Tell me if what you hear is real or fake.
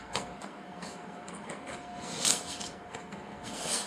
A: fake